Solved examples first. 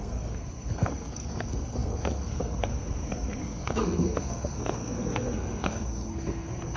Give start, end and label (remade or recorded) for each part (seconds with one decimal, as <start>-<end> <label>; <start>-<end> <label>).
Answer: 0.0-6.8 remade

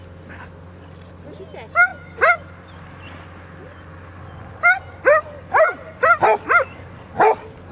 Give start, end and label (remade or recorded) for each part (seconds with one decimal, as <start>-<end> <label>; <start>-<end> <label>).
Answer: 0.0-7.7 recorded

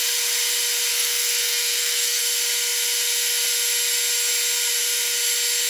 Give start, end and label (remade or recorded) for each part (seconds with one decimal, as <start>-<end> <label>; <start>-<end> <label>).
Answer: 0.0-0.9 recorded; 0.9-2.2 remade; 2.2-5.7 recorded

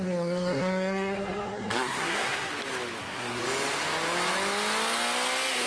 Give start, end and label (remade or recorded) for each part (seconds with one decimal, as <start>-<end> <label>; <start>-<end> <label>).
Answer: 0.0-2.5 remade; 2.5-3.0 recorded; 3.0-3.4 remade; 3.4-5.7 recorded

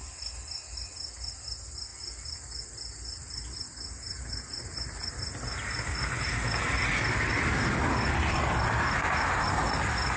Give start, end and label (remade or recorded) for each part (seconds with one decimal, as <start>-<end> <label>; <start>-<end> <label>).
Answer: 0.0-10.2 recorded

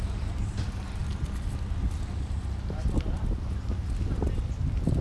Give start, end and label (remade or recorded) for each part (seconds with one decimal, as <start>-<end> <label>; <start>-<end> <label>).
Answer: 0.0-5.0 recorded

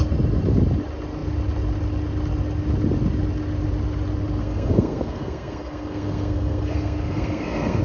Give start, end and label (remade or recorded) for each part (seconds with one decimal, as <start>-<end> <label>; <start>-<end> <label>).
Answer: 0.0-4.4 recorded; 4.4-7.8 remade